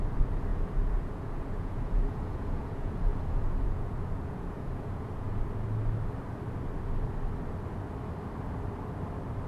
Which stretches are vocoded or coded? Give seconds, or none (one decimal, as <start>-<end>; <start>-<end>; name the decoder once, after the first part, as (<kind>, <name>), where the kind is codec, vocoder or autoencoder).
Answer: 0.5-5.4 (vocoder, Vocos)